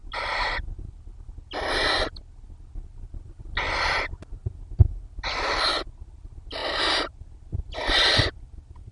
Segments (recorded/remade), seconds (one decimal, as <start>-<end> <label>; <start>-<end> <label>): 0.0-8.9 recorded